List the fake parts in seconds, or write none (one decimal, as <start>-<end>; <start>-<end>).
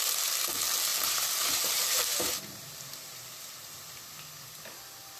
0.9-4.0